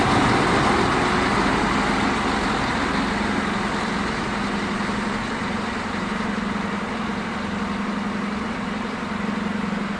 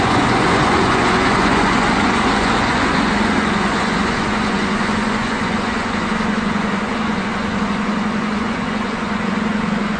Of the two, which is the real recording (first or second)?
first